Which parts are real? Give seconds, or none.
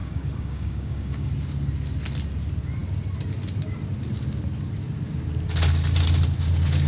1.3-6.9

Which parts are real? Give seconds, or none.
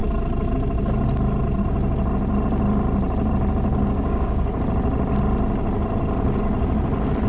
0.0-3.7; 4.6-7.3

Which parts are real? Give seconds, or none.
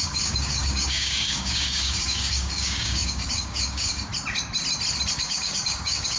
4.1-5.1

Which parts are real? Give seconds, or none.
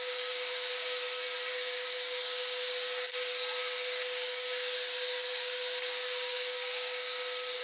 1.0-1.5; 3.3-4.0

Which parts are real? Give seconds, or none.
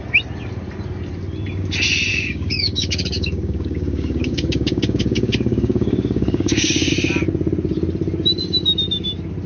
0.0-2.1; 6.9-9.5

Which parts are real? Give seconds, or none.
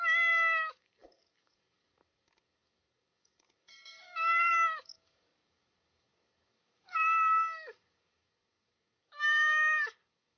none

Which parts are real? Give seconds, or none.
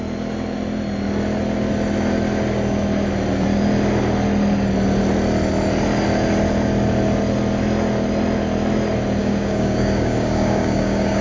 0.0-9.2